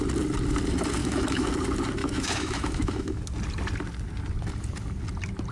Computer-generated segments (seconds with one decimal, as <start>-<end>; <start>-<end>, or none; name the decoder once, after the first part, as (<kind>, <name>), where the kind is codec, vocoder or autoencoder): 1.0-1.5 (autoencoder, DAC-VAE); 2.0-3.2